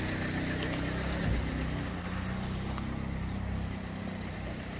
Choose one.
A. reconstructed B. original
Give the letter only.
B